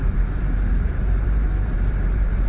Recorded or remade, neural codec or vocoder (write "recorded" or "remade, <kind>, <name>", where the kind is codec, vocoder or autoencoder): remade, vocoder, BigVGAN v2